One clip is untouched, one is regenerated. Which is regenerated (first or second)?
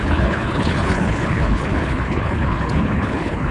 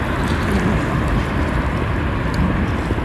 first